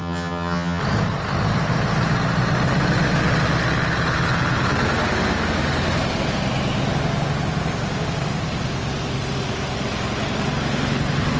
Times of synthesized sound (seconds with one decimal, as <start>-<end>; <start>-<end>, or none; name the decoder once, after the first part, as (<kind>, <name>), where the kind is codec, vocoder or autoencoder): 0.0-0.8 (vocoder, HiFi-GAN)

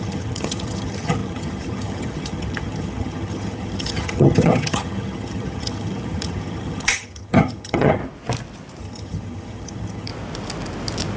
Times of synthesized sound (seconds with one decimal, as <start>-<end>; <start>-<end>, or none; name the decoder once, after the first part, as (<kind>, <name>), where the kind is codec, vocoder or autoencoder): 0.0-8.0 (vocoder, HiFi-GAN); 8.8-10.1

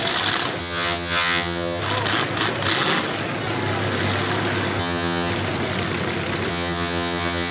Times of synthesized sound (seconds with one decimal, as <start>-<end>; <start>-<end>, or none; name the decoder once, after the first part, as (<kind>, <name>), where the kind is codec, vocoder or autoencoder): 0.6-1.8 (vocoder, HiFi-GAN); 4.8-5.3; 6.5-7.5